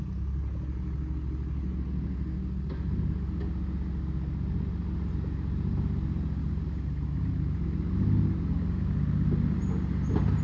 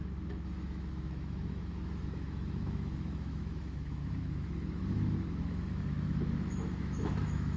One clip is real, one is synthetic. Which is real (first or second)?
first